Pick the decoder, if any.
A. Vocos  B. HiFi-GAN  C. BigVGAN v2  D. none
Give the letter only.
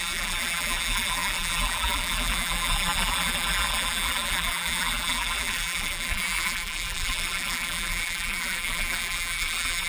C